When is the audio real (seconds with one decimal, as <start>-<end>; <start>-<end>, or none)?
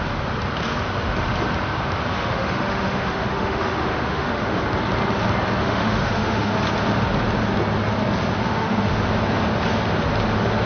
0.0-2.1; 4.6-5.6; 6.5-8.4; 9.0-10.7